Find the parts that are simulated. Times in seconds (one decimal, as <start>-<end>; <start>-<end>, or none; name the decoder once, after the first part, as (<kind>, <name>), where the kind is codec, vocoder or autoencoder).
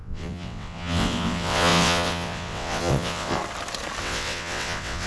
0.0-3.4 (vocoder, WaveNeXt); 4.0-5.1